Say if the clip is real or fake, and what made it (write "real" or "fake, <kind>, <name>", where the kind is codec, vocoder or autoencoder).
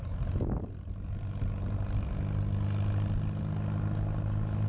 real